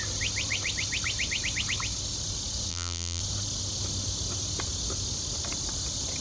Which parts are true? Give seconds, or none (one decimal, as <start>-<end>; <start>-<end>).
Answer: 0.0-2.7; 3.2-6.2